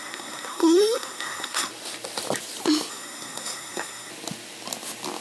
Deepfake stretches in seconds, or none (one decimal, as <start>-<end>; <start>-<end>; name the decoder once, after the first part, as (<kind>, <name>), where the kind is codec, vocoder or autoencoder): 0.0-1.7 (codec, SNAC); 2.9-4.1